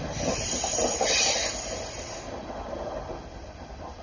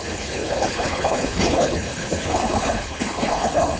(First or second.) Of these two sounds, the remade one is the second